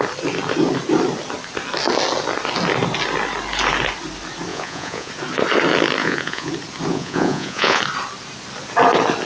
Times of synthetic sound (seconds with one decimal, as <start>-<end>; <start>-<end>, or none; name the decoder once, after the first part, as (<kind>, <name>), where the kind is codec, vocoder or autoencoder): 4.5-5.1 (vocoder, Vocos); 6.0-6.5; 6.9-7.8